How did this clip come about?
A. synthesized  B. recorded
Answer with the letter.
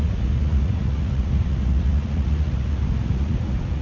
A